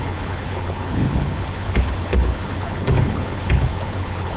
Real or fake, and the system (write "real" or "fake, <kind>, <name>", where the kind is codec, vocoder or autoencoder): fake, codec, HILCodec